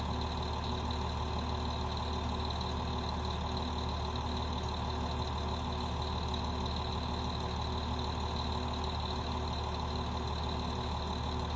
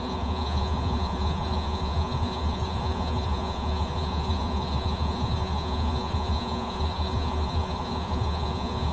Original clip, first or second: first